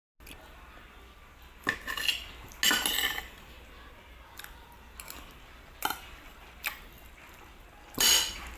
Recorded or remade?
recorded